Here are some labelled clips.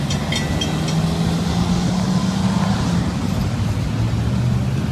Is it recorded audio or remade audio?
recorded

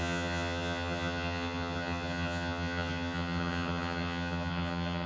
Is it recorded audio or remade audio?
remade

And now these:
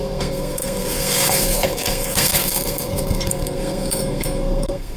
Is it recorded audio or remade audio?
remade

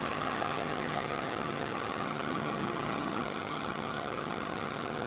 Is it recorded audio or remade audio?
remade